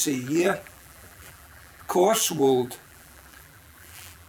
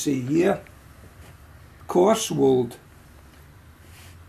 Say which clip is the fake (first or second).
first